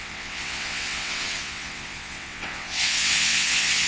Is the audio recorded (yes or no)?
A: no